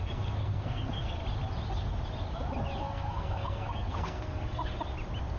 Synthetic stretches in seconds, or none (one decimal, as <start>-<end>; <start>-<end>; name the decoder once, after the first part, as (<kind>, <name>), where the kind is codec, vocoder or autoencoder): 0.0-1.2 (codec, SNAC); 2.8-4.6